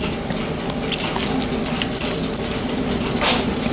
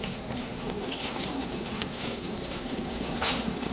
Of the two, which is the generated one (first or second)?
second